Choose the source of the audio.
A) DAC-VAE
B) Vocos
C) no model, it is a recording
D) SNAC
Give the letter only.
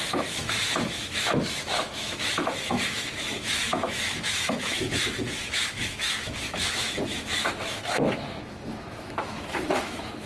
A